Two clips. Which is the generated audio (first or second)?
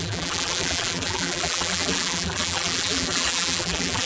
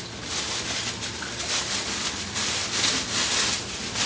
first